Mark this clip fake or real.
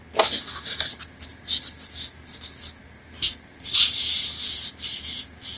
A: real